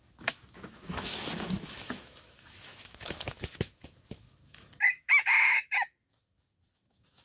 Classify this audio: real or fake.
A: fake